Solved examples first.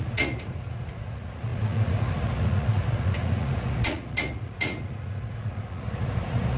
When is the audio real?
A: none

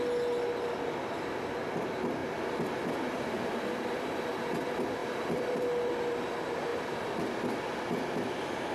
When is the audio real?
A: 0.0-2.2; 4.0-5.0; 5.9-6.7

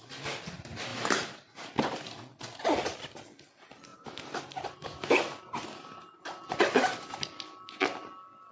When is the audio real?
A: 0.0-0.9; 2.0-3.9; 6.5-8.5

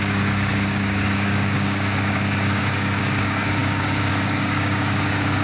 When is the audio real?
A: none

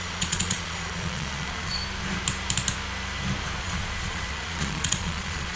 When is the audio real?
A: 1.8-3.6